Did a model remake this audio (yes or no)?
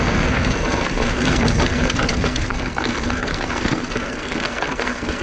yes